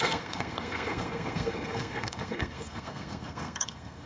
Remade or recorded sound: remade